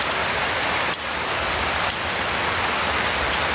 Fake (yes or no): no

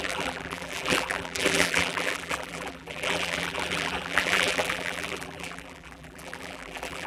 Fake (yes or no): yes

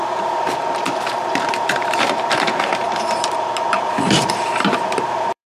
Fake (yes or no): yes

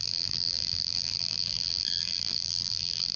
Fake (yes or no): yes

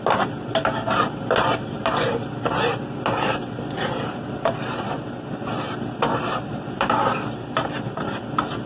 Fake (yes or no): no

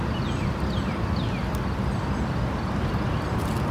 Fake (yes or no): no